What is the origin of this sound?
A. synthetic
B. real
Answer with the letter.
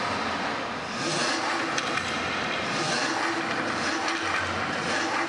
B